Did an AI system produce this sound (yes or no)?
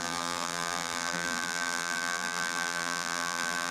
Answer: yes